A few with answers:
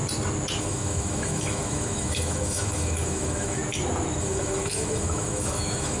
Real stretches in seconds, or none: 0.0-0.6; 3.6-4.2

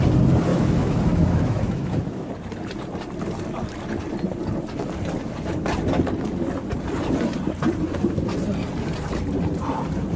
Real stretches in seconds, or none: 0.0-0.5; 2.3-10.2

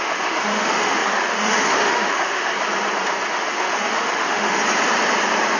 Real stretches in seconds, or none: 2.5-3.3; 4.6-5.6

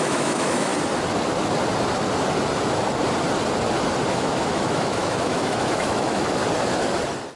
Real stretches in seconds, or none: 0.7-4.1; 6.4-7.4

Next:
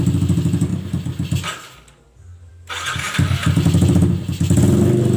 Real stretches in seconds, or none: 0.0-5.2

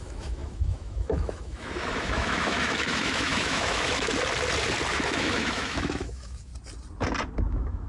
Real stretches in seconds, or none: 4.1-4.9; 6.5-7.5

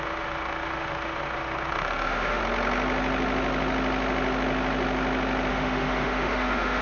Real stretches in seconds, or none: 2.4-5.5

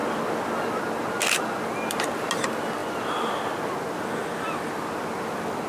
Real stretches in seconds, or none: 0.0-5.7